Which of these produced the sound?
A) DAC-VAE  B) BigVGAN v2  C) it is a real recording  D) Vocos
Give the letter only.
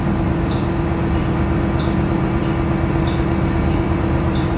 B